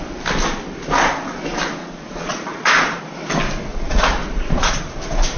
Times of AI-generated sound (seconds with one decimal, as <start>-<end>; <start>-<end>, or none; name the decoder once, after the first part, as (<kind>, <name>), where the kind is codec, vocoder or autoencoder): 1.8-3.0 (vocoder, Vocos); 3.7-4.7